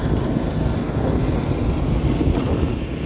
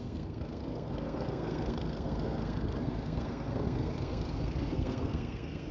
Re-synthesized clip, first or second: second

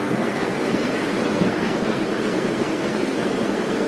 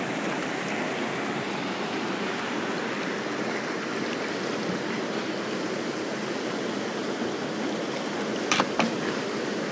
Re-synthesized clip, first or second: first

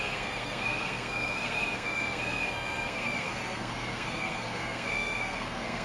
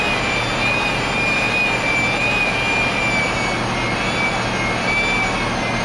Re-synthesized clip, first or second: first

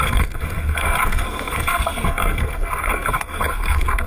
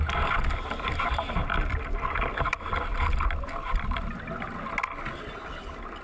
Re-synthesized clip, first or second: first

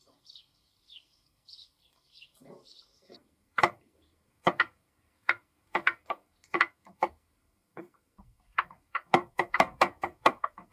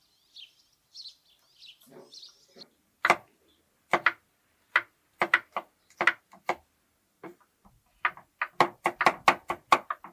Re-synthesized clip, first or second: first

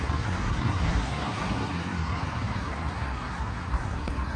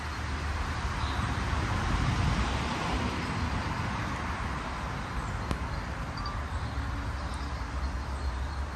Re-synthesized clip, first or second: first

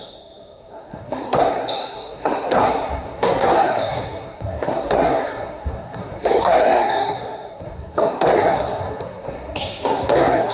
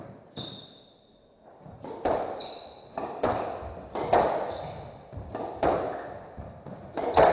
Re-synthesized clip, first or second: first